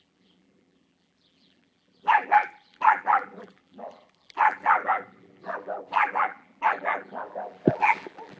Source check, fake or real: fake